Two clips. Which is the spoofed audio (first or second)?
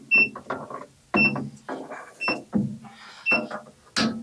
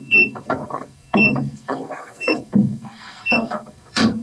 second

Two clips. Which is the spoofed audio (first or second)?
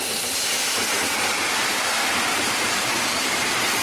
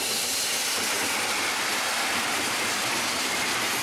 first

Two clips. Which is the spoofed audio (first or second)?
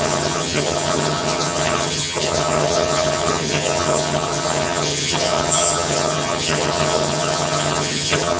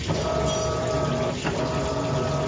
first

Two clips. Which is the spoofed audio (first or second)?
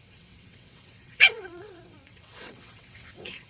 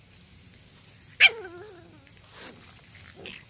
first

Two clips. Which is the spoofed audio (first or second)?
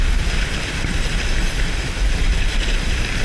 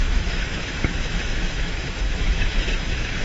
second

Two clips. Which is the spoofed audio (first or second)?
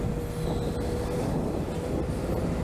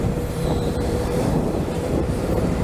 second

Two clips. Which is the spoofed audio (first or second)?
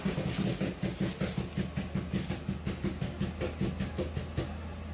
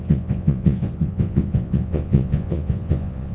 second